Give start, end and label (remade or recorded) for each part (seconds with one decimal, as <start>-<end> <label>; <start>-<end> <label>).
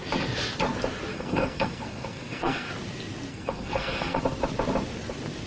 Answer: 0.0-1.1 recorded; 1.1-2.7 remade; 2.7-3.3 recorded; 3.3-4.2 remade; 4.2-5.5 recorded